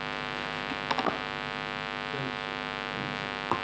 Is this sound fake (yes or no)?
no